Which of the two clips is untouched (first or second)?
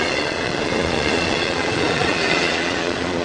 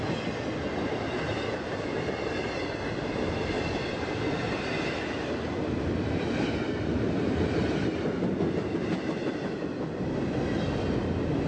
second